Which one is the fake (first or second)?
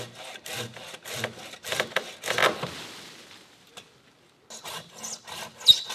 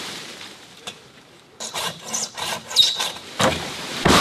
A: second